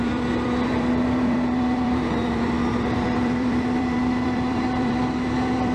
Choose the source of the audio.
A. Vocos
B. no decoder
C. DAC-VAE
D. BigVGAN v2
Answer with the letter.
D